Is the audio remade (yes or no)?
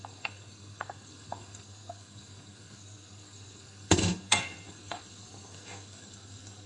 yes